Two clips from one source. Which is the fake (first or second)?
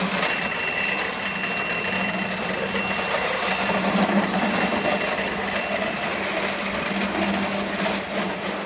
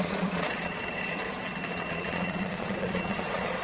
second